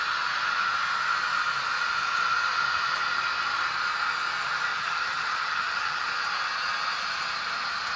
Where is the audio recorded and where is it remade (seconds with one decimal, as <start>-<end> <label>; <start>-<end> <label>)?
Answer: 0.0-4.7 recorded; 4.7-6.1 remade; 6.1-8.0 recorded